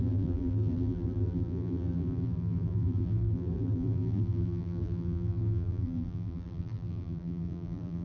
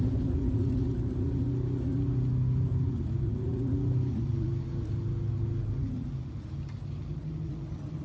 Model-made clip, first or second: first